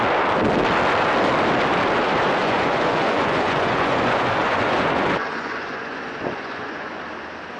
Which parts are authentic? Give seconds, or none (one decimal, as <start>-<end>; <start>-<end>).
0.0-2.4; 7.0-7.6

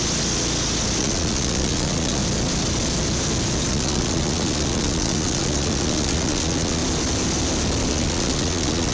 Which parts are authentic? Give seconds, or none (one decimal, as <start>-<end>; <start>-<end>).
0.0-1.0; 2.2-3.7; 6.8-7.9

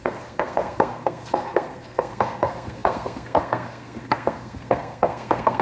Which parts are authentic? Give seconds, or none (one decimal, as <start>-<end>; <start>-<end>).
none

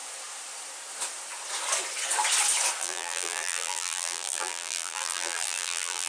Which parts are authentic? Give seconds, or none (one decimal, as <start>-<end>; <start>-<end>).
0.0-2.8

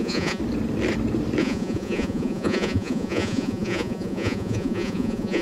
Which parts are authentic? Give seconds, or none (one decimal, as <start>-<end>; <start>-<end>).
0.4-1.4

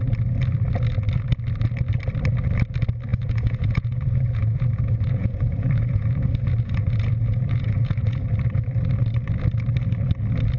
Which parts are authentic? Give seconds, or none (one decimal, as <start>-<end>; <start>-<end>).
0.0-3.1; 8.3-10.6

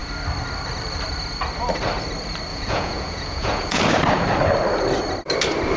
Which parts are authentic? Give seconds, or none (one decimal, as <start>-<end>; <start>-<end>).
0.0-2.5; 3.8-5.8

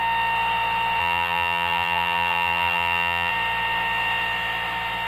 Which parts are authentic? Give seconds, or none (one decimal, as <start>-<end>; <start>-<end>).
0.0-1.0; 3.3-5.1